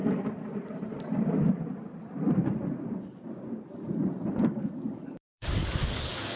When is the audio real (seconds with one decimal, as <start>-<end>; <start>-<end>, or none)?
0.0-4.4